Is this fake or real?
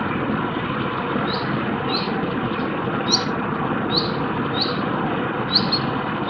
real